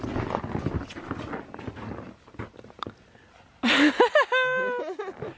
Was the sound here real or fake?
real